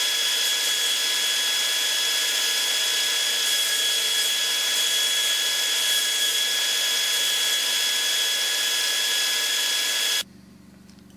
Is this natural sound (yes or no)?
yes